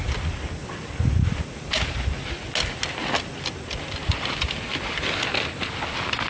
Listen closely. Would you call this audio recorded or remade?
recorded